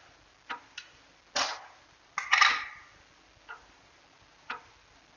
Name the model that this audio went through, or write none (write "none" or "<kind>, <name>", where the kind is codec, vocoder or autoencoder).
none